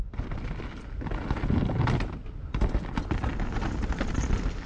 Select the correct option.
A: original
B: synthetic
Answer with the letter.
A